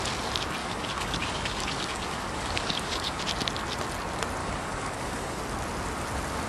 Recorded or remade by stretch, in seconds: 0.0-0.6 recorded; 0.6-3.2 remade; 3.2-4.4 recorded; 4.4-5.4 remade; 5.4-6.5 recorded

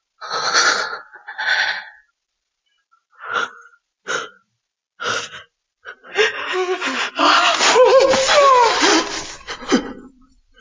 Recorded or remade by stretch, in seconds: 0.0-10.6 recorded

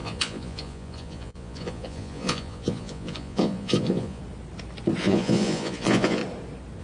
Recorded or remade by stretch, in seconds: 0.0-4.2 remade; 4.2-5.0 recorded; 5.0-6.2 remade; 6.2-6.8 recorded

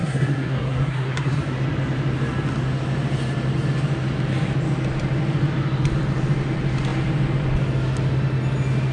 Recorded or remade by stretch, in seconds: 0.0-1.4 remade; 1.4-8.9 recorded

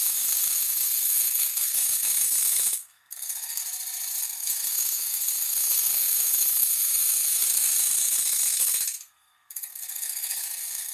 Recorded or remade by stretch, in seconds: 0.0-3.6 remade; 3.6-4.2 recorded; 4.2-10.9 remade

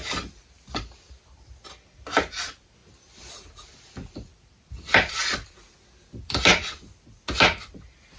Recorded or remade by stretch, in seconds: 0.0-8.2 recorded